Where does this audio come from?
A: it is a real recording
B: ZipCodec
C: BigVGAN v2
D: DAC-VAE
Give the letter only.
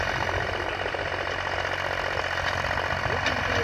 A